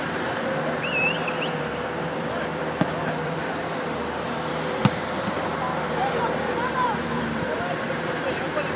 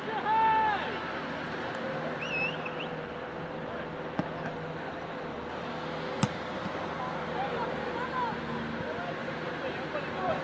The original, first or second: second